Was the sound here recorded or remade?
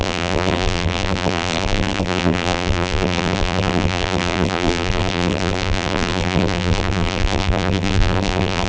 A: remade